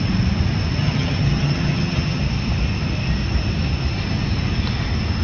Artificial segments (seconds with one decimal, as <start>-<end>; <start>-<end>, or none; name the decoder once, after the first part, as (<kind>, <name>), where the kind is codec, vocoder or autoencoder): 0.8-2.2 (vocoder, HiFi-GAN)

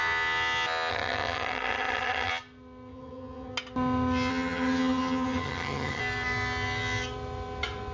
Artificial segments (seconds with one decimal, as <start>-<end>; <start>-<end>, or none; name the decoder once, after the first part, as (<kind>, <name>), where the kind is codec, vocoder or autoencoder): 0.9-2.3 (vocoder, HiFi-GAN); 2.9-3.5; 4.3-6.0

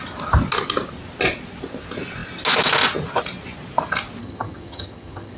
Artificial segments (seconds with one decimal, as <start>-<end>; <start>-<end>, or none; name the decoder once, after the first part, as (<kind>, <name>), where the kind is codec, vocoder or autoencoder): 4.2-5.4 (vocoder, HiFi-GAN)

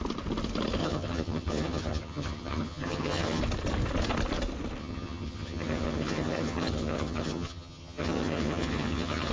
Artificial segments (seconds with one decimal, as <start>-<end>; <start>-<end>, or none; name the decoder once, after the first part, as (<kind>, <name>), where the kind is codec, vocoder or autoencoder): 0.8-3.4 (vocoder, HiFi-GAN); 4.8-9.3